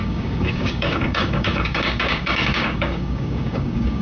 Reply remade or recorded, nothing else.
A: remade